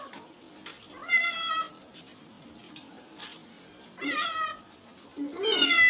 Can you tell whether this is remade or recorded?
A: recorded